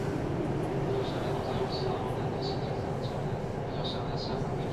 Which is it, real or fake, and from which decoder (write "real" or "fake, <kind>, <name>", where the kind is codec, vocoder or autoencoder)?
real